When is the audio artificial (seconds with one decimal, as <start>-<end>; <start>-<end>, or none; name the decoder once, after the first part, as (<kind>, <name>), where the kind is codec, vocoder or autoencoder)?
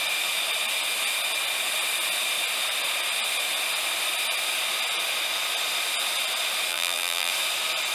6.7-7.3 (vocoder, BigVGAN v2)